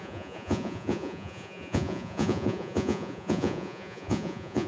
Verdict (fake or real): fake